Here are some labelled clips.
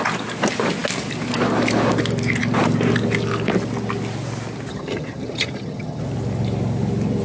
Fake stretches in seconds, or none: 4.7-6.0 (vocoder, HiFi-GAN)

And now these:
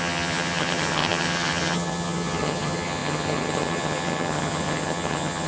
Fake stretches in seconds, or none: 0.0-5.5 (vocoder, HiFi-GAN)

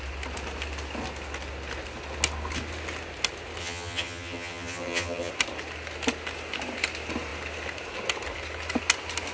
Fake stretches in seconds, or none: 3.6-5.3 (vocoder, HiFi-GAN)

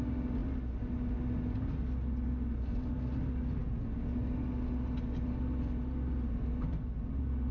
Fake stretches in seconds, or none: none

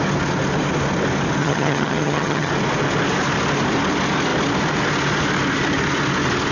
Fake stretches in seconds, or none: 1.4-2.5 (vocoder, HiFi-GAN)